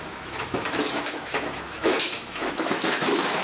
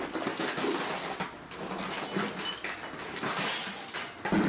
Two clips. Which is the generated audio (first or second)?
first